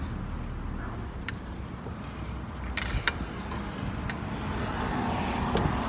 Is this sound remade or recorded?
recorded